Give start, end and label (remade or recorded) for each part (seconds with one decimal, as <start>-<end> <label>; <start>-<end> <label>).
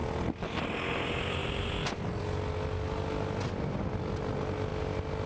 0.0-1.4 recorded; 1.4-2.2 remade; 2.2-5.3 recorded